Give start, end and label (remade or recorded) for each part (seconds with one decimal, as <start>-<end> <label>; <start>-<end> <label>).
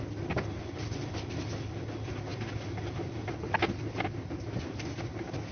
0.0-5.5 recorded